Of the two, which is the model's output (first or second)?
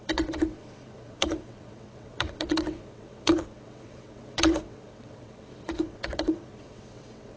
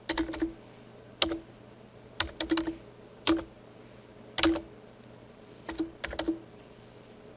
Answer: first